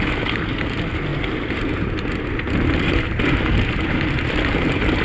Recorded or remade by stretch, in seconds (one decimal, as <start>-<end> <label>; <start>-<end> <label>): 0.0-5.0 recorded